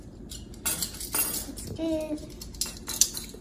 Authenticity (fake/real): real